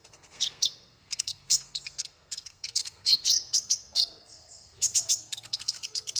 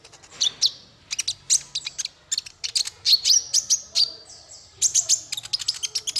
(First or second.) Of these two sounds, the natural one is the second